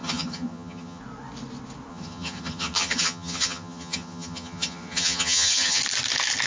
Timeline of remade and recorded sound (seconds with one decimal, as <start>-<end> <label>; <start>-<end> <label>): 0.0-1.0 remade; 1.0-1.9 recorded; 1.9-5.8 remade; 5.8-6.5 recorded